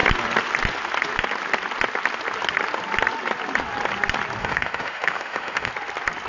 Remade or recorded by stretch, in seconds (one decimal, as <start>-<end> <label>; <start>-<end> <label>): 0.0-4.4 recorded; 4.4-5.7 remade; 5.7-6.3 recorded